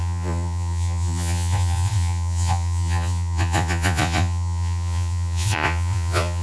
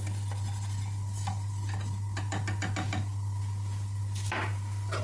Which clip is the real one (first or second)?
second